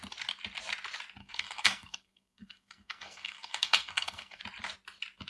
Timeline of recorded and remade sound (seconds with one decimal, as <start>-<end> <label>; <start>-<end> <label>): 0.0-1.2 recorded; 1.2-4.4 remade; 4.4-5.3 recorded